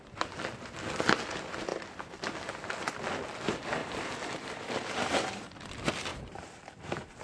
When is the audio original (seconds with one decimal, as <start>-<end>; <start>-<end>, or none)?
0.0-3.8; 4.9-6.1

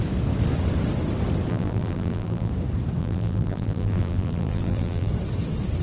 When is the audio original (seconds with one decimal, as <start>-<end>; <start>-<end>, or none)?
0.0-1.5; 2.5-3.0; 5.1-5.8

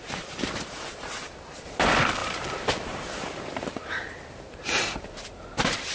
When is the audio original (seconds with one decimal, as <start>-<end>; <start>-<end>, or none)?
none

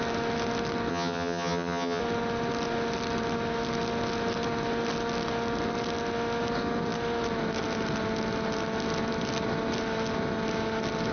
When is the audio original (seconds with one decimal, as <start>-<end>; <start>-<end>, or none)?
0.0-0.9; 2.0-11.1

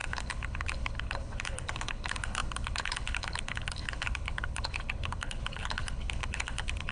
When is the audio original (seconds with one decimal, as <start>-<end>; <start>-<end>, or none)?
none

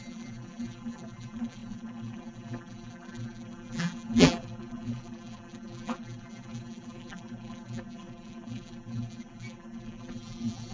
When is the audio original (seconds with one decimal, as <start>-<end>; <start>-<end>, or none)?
none

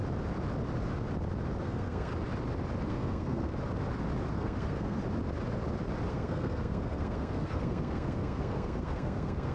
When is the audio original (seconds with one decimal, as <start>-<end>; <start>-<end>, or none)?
0.0-1.6; 2.1-2.9; 3.5-4.3; 5.0-6.1